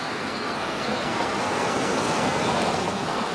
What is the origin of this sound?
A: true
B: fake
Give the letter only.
B